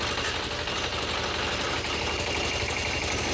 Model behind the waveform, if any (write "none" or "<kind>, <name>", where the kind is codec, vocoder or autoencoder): none